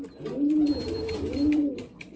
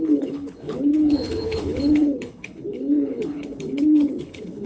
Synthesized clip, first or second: second